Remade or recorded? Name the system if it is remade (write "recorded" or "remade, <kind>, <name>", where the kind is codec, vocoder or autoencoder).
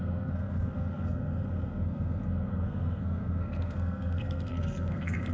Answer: remade, codec, SNAC